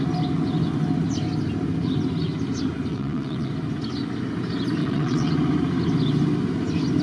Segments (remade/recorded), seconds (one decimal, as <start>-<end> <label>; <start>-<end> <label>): 0.0-2.9 recorded; 2.9-3.5 remade; 3.5-4.8 recorded; 4.8-5.3 remade; 5.3-7.0 recorded